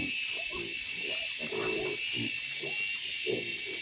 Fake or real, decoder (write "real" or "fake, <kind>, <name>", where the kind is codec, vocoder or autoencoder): real